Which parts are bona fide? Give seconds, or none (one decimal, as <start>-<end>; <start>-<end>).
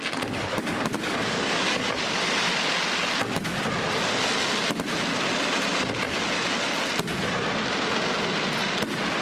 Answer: 0.0-0.5; 2.2-9.2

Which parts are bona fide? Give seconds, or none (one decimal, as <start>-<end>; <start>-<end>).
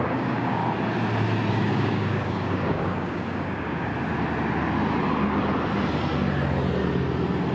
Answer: 0.6-1.5; 3.9-7.5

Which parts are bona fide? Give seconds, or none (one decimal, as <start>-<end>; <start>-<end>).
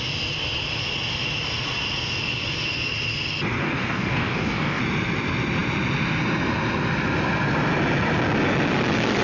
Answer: 0.0-3.6; 4.8-9.2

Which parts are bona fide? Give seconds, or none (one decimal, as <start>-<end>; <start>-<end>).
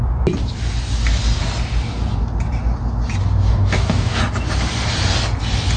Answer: 0.0-3.5; 4.2-5.8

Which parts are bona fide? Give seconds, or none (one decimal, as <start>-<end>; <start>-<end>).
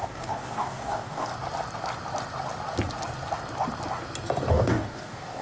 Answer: 1.3-4.5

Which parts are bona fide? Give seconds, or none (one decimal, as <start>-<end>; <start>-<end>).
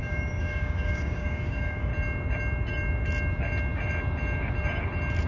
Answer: 1.9-5.3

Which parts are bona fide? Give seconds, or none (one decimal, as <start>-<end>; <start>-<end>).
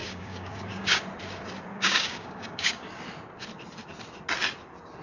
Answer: 1.0-1.7; 3.0-5.0